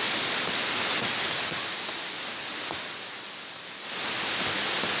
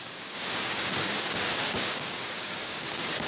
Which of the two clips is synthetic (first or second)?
second